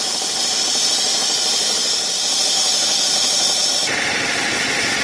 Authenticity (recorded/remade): recorded